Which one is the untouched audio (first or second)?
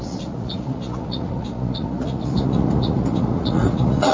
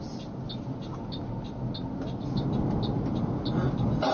second